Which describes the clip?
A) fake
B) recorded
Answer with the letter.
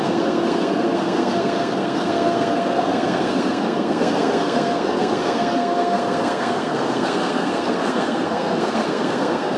A